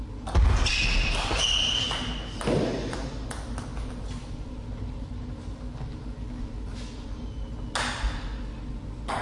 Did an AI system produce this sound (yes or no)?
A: no